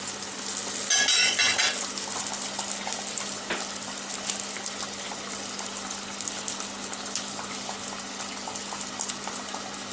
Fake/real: real